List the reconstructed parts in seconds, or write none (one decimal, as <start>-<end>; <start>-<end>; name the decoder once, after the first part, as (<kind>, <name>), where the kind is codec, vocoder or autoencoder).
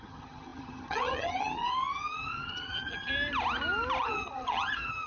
0.0-3.1 (vocoder, HiFi-GAN); 4.0-5.1